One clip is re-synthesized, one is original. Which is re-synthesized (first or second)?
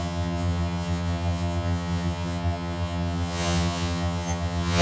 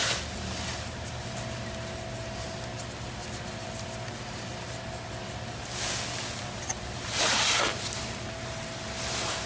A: first